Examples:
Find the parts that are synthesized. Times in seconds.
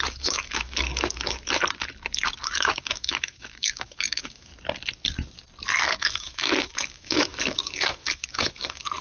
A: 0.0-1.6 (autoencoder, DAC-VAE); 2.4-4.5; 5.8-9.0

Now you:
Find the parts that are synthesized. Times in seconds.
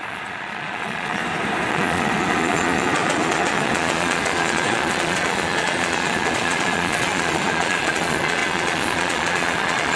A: 0.0-1.2 (vocoder, Vocos); 1.7-10.0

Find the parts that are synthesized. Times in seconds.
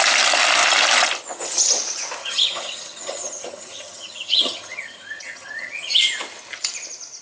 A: 2.2-6.0 (vocoder, HiFi-GAN)